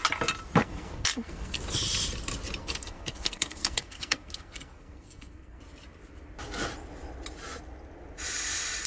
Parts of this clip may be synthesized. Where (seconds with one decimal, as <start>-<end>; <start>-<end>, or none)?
0.6-1.6; 2.6-5.6